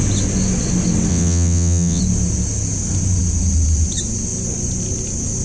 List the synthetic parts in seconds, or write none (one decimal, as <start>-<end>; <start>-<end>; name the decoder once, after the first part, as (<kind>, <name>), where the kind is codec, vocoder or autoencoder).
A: 1.1-2.0 (vocoder, WaveNeXt)